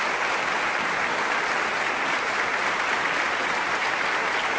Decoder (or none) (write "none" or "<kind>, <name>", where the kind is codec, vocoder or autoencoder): none